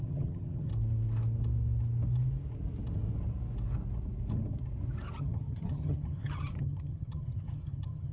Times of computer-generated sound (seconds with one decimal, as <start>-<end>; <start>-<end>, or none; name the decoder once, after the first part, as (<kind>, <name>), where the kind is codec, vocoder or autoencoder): 0.0-0.7 (vocoder, HiFi-GAN); 5.2-8.1